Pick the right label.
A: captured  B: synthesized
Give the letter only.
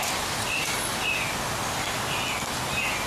A